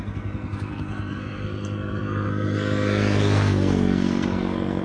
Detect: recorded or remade remade